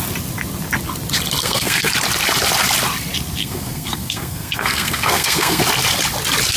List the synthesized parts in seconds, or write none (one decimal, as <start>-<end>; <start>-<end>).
1.4-1.9; 3.4-5.6